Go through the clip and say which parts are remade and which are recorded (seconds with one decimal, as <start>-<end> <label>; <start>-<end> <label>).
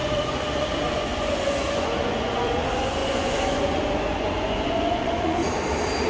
0.0-5.4 remade; 5.4-6.1 recorded